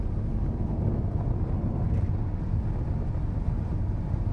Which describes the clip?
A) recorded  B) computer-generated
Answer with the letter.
A